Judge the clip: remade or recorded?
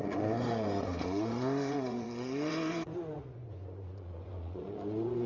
remade